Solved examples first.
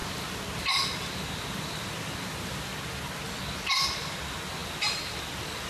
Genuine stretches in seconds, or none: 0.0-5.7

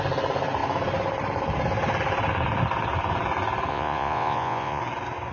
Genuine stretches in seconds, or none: 0.0-3.7; 4.8-5.3

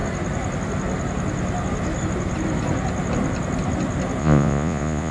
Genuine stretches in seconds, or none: 0.0-4.2

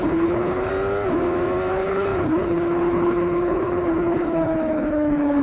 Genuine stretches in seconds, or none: 0.7-1.7

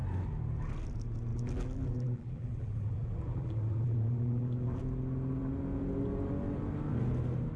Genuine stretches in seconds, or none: 0.0-1.3; 4.8-7.6

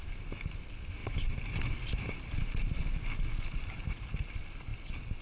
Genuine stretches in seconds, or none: 0.0-5.2

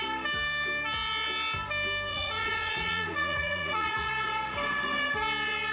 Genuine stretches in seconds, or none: 0.0-2.1; 4.1-5.7

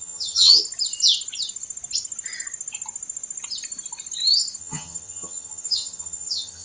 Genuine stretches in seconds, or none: 0.6-4.6